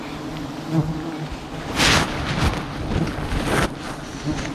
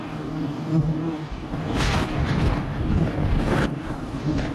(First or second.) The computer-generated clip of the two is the second